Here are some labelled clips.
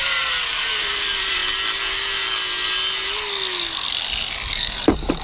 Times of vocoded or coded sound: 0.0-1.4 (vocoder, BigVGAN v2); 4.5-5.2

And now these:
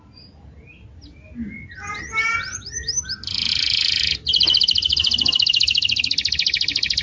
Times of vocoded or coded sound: none

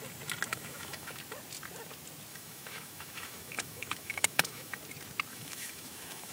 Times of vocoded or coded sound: 0.5-1.2 (autoencoder, DAC-VAE); 2.3-4.8; 5.3-6.3

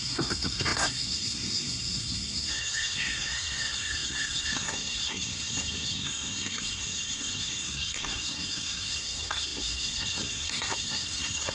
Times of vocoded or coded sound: 0.0-11.5 (codec, SNAC)